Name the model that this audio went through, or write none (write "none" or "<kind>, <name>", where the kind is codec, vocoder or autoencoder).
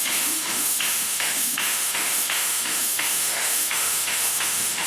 autoencoder, DAC-VAE